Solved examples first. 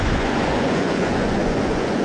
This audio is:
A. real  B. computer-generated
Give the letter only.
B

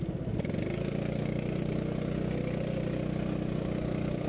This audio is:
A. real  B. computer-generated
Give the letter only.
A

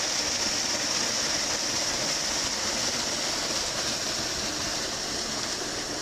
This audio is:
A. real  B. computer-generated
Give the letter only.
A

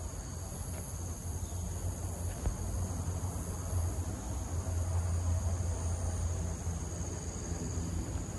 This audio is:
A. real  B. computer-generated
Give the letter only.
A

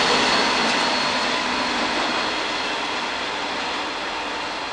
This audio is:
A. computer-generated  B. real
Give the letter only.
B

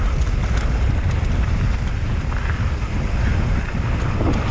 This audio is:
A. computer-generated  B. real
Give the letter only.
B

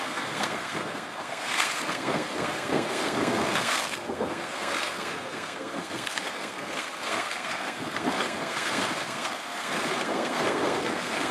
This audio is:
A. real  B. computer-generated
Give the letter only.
B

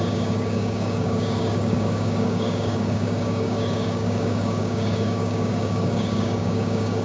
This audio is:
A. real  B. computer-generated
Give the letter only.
B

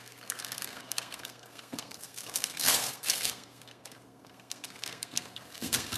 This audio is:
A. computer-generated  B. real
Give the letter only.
A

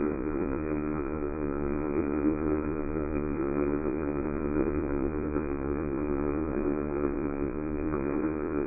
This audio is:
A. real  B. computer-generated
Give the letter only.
B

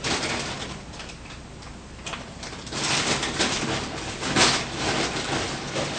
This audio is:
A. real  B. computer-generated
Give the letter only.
A